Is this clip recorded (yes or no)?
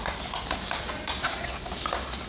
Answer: yes